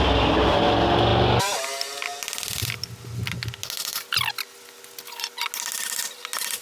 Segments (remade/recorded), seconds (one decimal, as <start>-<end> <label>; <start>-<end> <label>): 0.0-6.6 recorded

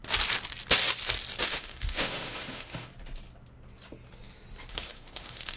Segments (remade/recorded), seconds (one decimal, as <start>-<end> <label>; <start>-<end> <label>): 0.0-1.4 recorded; 1.4-2.9 remade; 2.9-4.7 recorded; 4.7-5.6 remade

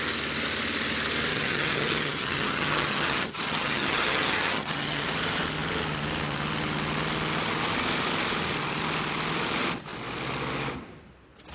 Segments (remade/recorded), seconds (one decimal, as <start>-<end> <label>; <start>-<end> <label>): 0.0-1.3 recorded; 1.3-5.1 remade; 5.1-11.5 recorded

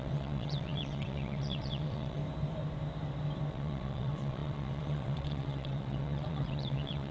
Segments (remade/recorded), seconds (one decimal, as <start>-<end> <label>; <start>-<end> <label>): 0.0-2.2 remade; 2.2-3.5 recorded; 3.5-7.1 remade

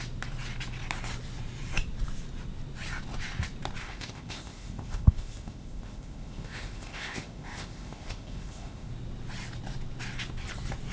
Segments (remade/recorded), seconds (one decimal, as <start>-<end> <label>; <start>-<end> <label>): 0.0-3.8 recorded; 3.8-8.9 remade; 8.9-10.9 recorded

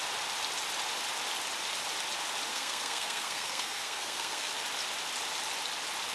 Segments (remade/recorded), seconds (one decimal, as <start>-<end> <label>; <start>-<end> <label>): 0.0-2.5 recorded; 2.5-4.5 remade; 4.5-6.1 recorded